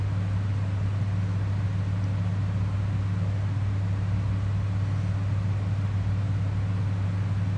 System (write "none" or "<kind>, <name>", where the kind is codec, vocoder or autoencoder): none